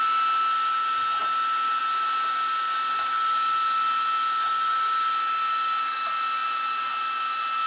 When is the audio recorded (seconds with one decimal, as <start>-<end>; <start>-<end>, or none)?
0.0-7.7